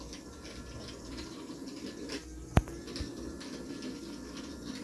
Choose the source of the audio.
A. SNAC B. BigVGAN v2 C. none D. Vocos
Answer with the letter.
C